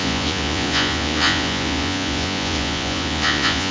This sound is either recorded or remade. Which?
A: remade